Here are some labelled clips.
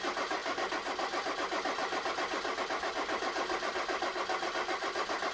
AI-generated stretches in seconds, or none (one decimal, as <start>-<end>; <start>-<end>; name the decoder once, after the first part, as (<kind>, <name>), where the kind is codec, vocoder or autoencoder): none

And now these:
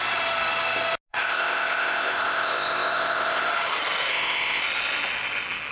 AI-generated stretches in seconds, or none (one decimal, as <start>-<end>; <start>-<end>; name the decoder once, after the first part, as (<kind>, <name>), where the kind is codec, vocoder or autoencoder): 1.1-3.5 (codec, ZipCodec); 4.1-4.6

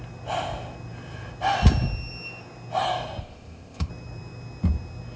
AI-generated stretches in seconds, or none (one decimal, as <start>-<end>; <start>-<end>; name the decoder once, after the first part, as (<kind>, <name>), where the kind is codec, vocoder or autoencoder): 3.2-3.9 (codec, ZipCodec)

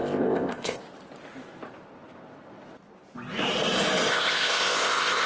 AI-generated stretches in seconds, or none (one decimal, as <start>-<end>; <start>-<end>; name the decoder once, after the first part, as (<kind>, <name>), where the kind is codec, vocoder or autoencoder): 0.0-0.8 (codec, ZipCodec); 4.1-5.3